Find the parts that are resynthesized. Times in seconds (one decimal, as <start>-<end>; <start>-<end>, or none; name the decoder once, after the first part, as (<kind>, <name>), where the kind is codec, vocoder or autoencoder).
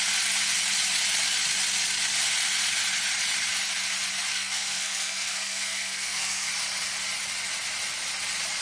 4.3-6.5 (codec, SNAC)